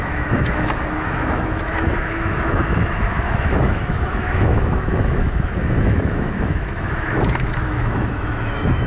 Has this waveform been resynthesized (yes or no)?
yes